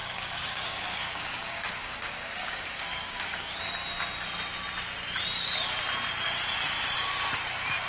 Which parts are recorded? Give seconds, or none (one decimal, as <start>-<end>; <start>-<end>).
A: 3.6-7.9